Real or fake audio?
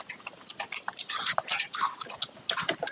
real